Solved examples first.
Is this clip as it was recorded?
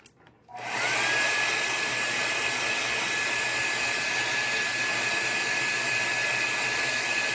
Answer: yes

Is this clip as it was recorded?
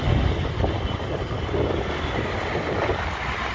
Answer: yes